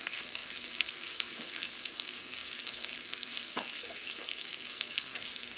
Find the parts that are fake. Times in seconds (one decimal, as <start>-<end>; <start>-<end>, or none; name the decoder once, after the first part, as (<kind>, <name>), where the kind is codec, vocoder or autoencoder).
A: 0.0-5.6 (codec, SNAC)